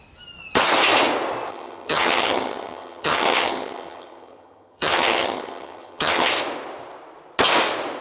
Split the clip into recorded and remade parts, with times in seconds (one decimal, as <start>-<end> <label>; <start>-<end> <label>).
0.0-1.5 recorded; 1.5-6.3 remade; 6.3-8.0 recorded